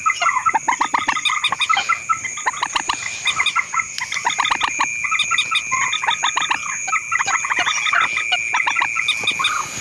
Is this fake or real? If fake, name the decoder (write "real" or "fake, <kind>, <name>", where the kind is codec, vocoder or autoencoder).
real